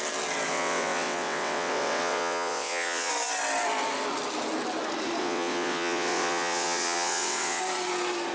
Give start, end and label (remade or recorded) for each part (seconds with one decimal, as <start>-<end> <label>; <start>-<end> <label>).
0.0-0.5 recorded; 0.5-3.1 remade; 3.1-5.2 recorded; 5.2-7.6 remade; 7.6-8.3 recorded